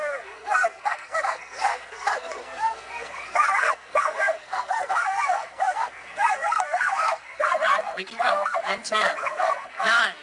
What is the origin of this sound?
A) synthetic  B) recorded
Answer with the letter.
A